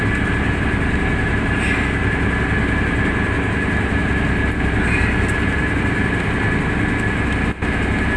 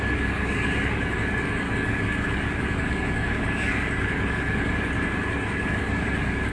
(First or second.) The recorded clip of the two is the first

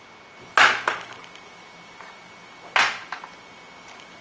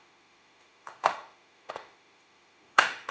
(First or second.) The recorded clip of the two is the first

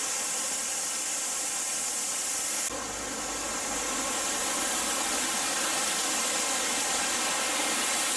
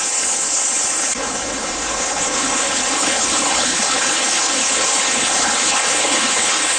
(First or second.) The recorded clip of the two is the first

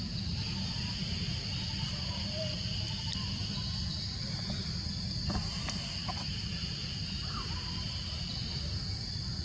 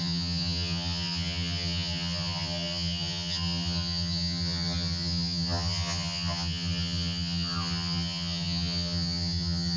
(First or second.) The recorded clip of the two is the first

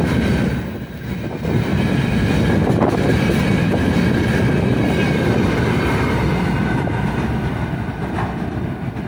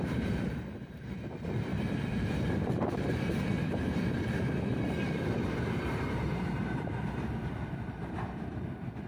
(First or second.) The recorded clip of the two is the first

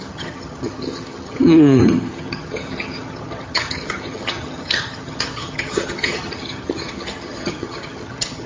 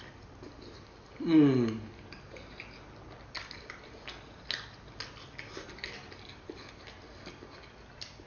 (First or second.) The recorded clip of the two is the second